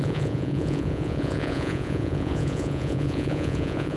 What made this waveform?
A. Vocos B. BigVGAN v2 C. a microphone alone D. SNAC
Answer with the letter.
A